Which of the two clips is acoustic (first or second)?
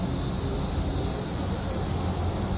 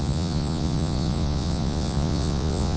first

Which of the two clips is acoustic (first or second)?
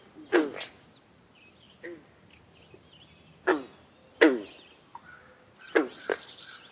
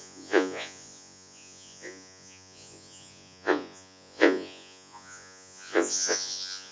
first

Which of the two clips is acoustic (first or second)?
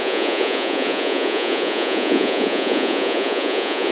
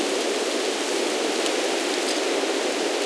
second